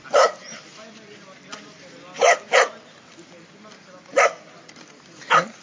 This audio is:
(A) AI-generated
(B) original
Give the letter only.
A